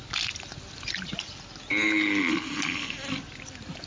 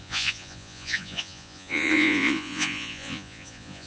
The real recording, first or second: first